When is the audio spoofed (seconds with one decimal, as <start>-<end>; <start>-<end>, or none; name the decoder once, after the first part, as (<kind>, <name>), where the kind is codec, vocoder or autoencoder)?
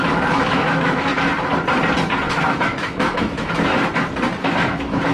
0.0-1.1 (autoencoder, DAC-VAE); 2.3-3.7; 4.4-5.1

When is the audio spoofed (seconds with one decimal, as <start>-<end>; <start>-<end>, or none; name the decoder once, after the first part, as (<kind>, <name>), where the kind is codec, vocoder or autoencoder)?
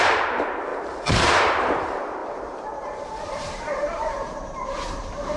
0.0-5.4 (vocoder, BigVGAN v2)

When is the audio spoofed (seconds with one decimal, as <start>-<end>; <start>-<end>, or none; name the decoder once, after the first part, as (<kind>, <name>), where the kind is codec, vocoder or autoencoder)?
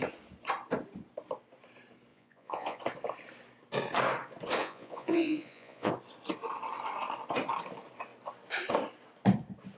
2.1-2.8 (vocoder, Vocos); 4.6-5.9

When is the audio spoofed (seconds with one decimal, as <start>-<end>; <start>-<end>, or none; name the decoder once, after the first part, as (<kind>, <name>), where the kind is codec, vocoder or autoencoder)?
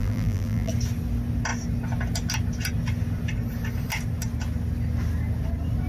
0.0-0.7 (vocoder, BigVGAN v2)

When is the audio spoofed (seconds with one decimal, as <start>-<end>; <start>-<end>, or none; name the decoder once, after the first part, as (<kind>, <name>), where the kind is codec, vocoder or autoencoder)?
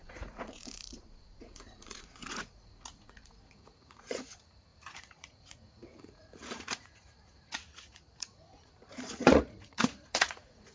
0.0-10.7 (vocoder, Vocos)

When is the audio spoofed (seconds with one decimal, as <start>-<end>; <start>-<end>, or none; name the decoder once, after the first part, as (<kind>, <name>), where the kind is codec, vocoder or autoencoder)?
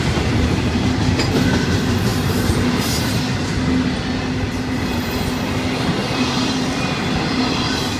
2.1-3.2 (vocoder, BigVGAN v2); 6.0-6.5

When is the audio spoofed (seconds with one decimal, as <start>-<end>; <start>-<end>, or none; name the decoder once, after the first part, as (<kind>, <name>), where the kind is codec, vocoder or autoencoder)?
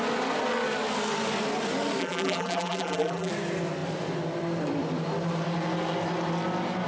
2.0-3.3 (vocoder, BigVGAN v2)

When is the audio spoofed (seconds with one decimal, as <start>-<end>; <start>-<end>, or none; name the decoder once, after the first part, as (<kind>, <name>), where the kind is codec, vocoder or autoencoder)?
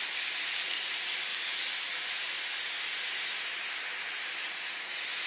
none